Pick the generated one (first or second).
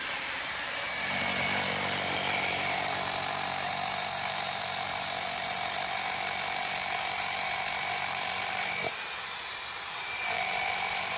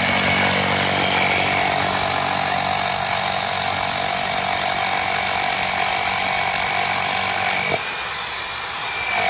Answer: first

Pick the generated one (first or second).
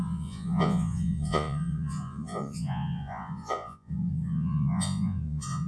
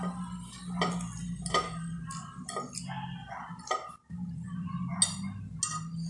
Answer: first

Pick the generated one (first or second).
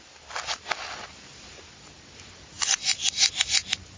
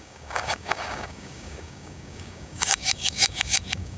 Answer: second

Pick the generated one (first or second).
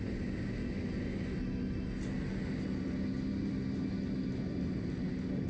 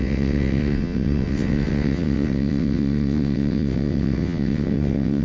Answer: second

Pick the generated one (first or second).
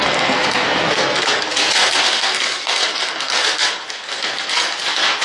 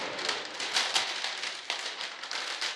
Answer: first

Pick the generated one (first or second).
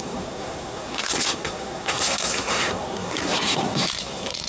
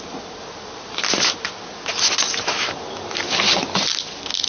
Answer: first